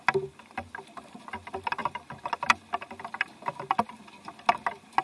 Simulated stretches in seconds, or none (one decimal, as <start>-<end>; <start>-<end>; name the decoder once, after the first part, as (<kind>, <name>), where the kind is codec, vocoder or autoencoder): 1.8-2.3 (vocoder, BigVGAN v2)